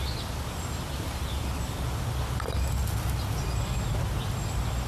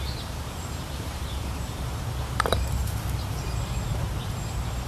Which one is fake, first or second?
second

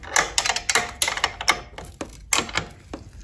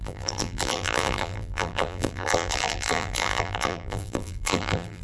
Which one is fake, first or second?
second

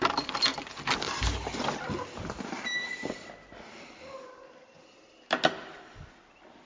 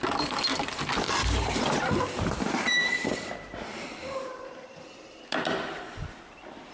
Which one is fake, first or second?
second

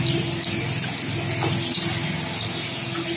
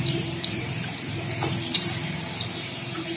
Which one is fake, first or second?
second